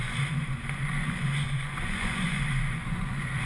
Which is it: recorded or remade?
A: remade